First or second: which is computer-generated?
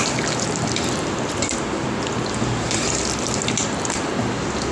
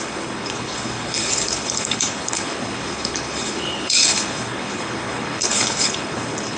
second